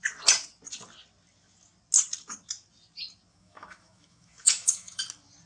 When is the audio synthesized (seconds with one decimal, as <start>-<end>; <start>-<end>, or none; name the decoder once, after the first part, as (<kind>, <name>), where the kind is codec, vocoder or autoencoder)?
3.3-5.0 (autoencoder, DAC-VAE)